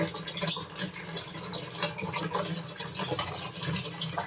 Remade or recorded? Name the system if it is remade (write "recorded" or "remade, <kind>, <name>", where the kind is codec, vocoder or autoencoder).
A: recorded